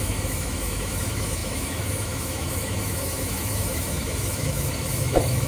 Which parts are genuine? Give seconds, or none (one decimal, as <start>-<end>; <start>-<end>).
none